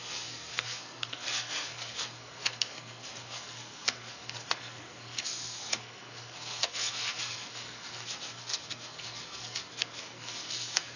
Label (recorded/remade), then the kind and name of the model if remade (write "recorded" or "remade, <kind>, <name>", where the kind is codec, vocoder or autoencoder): remade, codec, SNAC